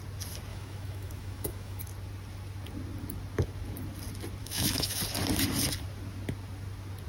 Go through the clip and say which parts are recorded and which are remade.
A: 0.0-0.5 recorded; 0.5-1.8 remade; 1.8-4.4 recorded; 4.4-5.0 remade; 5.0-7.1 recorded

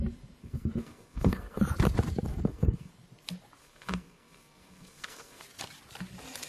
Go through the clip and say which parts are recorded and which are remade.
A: 0.0-0.4 recorded; 0.4-1.6 remade; 1.6-2.3 recorded; 2.3-2.9 remade; 2.9-3.6 recorded; 3.6-5.4 remade; 5.4-6.5 recorded

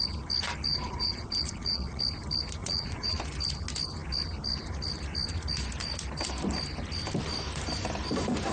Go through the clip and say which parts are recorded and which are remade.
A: 0.0-0.7 recorded; 0.7-2.0 remade; 2.0-2.6 recorded; 2.6-3.2 remade; 3.2-8.5 recorded